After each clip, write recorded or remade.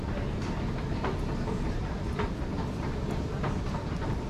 recorded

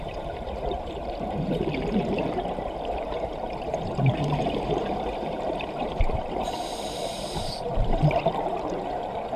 remade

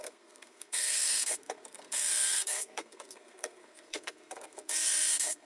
remade